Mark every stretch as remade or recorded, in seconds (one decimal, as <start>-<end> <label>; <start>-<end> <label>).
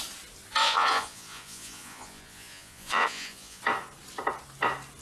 0.0-0.6 recorded; 0.6-3.6 remade; 3.6-5.0 recorded